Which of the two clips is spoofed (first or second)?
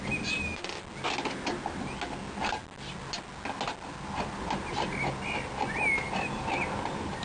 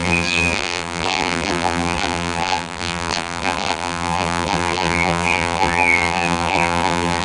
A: second